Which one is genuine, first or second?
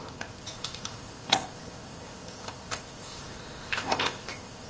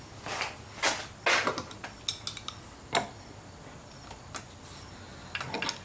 second